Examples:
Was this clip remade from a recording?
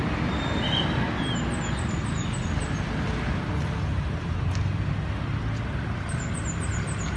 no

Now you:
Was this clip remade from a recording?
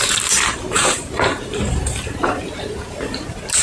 yes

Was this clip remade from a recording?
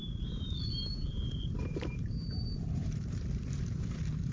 yes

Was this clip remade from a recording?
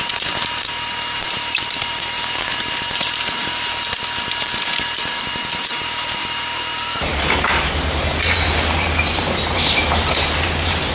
yes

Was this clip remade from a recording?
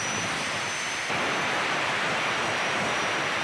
yes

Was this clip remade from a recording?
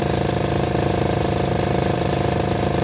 yes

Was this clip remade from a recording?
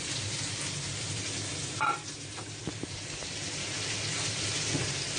yes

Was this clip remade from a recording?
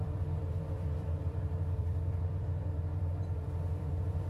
yes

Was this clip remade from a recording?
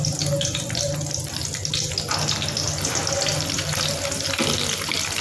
no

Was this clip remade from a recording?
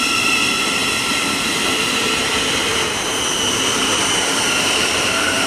yes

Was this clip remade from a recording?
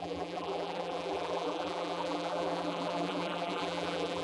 yes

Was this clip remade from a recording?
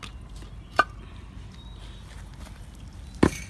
no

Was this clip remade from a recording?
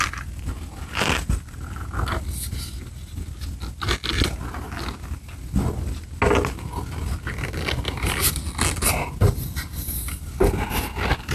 no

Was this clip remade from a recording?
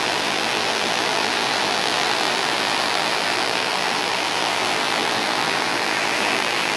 yes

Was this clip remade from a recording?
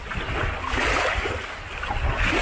no